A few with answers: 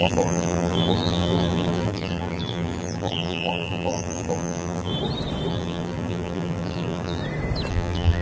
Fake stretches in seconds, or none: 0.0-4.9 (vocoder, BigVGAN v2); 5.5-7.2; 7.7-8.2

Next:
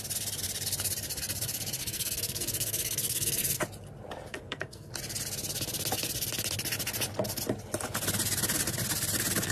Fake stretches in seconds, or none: 1.8-3.6 (codec, SNAC); 4.3-4.9

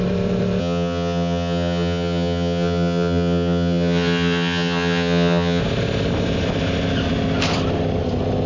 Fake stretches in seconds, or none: 0.6-5.6 (vocoder, HiFi-GAN)

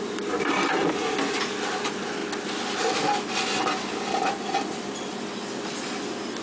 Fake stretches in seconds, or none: none